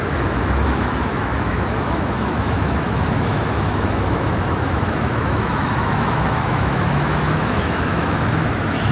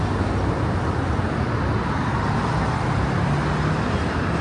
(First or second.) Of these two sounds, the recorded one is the second